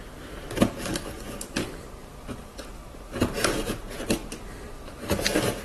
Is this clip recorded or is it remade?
remade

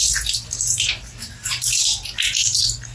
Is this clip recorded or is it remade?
remade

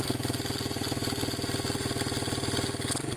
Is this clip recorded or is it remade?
recorded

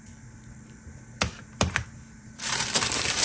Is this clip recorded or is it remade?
remade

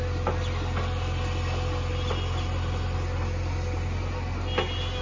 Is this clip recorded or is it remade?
recorded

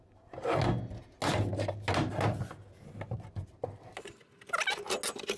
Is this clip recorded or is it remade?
recorded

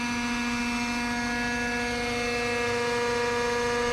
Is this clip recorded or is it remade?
recorded